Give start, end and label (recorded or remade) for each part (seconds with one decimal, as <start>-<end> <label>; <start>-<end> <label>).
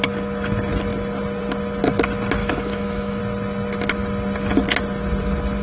0.0-2.4 recorded; 2.4-3.2 remade; 3.2-5.6 recorded